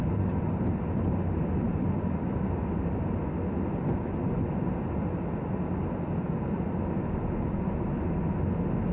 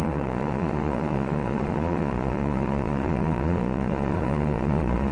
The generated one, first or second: second